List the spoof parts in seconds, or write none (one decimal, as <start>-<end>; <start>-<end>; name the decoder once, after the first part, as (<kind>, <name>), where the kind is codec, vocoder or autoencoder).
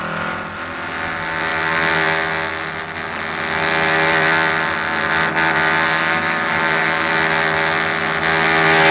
5.9-7.1 (codec, DAC)